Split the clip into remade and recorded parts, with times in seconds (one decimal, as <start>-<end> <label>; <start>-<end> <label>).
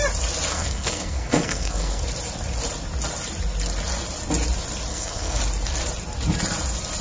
0.0-0.5 recorded; 0.5-2.0 remade; 2.0-4.9 recorded; 4.9-5.4 remade; 5.4-7.0 recorded